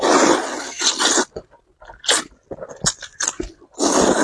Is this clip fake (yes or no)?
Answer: no